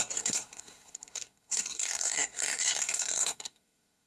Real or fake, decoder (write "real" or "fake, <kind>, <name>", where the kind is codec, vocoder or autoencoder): fake, codec, SNAC